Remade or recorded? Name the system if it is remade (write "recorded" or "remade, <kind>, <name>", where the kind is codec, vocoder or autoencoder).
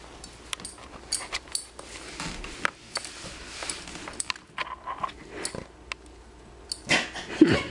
recorded